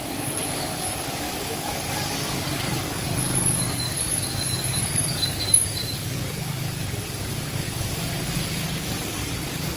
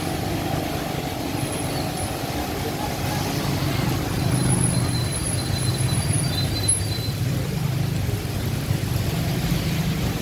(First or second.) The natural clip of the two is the second